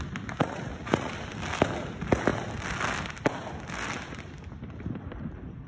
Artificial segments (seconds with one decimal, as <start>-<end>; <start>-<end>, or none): 0.4-1.1